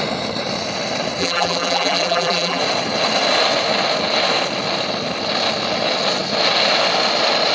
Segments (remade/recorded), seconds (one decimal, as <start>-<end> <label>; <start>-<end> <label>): 0.0-1.2 recorded; 1.2-2.6 remade; 2.6-7.5 recorded